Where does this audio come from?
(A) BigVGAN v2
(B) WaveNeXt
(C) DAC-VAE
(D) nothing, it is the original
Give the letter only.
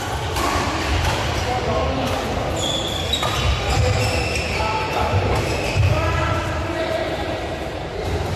D